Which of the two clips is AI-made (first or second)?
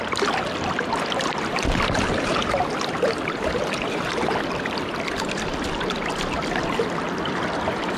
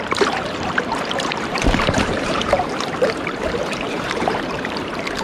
second